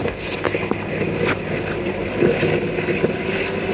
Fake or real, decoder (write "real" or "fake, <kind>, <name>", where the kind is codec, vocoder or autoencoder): real